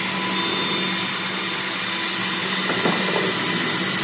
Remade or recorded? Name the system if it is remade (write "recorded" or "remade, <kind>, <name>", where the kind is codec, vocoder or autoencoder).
recorded